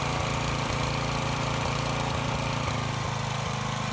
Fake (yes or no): no